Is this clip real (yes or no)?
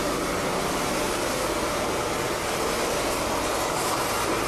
yes